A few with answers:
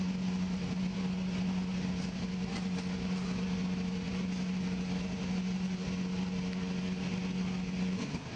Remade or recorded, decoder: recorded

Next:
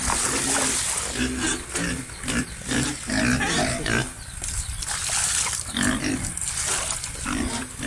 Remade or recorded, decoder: recorded